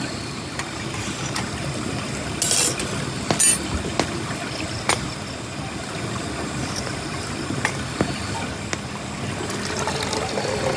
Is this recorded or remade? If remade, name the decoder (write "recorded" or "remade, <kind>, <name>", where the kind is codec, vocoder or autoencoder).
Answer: recorded